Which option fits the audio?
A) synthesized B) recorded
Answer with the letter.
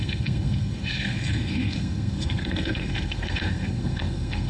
A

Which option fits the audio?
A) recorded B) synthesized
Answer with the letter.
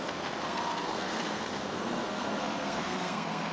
B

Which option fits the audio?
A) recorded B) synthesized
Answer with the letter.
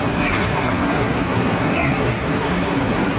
B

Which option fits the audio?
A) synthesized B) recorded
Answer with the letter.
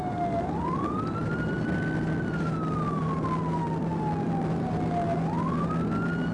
B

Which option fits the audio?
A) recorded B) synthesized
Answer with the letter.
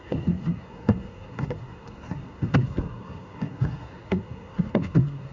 B